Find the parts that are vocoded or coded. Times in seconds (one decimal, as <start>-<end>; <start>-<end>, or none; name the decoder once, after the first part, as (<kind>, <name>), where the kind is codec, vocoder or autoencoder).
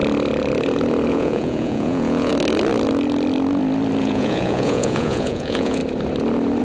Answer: 1.1-2.3 (vocoder, Vocos); 4.0-5.8